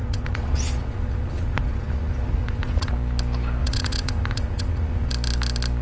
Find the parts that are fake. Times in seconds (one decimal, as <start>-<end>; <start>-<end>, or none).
0.0-2.9; 3.6-5.1